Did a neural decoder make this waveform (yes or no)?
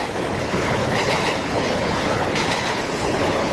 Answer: yes